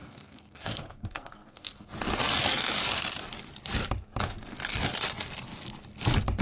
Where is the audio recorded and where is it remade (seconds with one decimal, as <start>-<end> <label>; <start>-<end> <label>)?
0.0-1.9 remade; 1.9-6.4 recorded